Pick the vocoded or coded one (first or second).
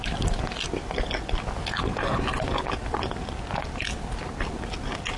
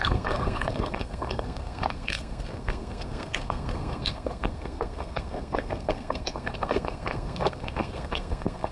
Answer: second